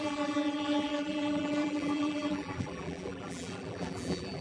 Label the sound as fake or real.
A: fake